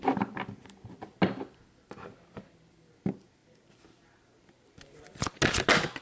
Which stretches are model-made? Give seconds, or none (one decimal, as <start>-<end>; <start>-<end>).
none